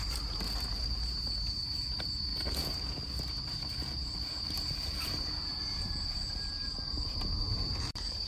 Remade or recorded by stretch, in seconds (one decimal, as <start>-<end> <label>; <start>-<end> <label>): 0.0-8.3 remade